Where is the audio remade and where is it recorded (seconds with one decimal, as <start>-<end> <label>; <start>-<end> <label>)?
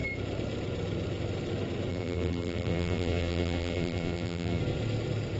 0.0-1.9 recorded; 1.9-4.6 remade; 4.6-5.4 recorded